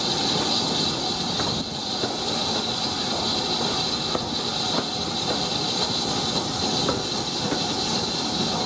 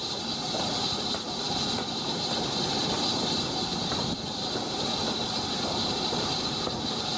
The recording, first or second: first